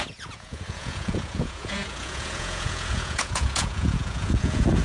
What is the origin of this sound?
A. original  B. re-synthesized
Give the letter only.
B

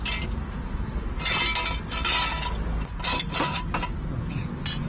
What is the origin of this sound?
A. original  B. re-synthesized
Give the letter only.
A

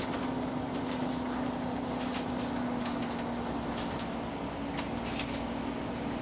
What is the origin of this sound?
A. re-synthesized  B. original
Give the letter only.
B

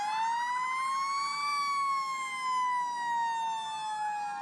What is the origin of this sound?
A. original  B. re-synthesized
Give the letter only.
A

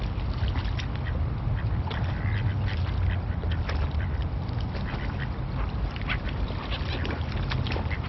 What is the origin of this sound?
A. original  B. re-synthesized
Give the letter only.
A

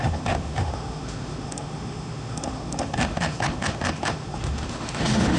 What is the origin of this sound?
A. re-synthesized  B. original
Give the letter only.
A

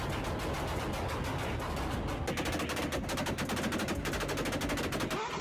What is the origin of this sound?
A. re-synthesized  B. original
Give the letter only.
B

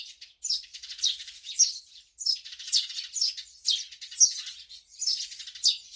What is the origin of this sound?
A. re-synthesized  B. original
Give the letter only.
B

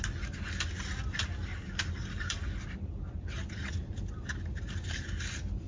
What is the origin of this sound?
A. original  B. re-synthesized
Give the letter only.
A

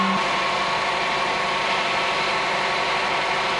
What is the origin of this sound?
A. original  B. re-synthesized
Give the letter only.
A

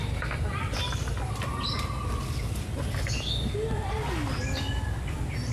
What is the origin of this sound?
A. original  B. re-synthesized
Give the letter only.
A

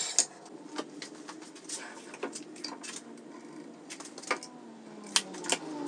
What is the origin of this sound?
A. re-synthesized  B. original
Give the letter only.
B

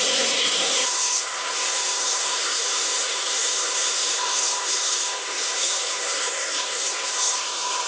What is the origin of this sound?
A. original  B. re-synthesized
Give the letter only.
B